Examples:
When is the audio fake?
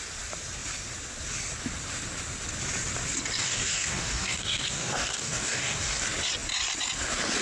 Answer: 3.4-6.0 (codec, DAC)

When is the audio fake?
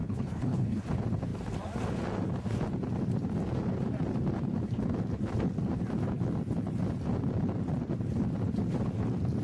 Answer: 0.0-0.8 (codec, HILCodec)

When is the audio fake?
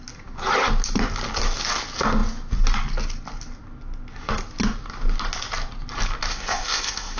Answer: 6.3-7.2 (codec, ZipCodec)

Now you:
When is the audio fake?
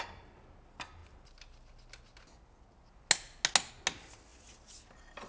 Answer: none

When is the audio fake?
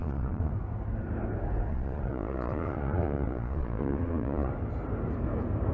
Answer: 0.0-0.5 (vocoder, Vocos); 1.7-4.5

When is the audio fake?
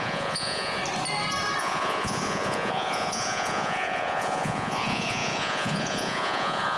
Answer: 0.0-0.8 (vocoder, Vocos); 1.6-6.8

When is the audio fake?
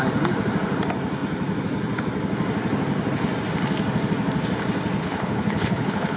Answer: 5.0-6.2 (codec, HILCodec)